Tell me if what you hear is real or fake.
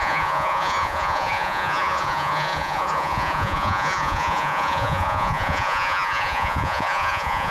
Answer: fake